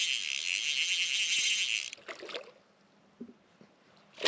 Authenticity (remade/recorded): recorded